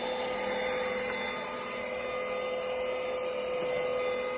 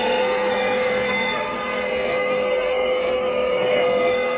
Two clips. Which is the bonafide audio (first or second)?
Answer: first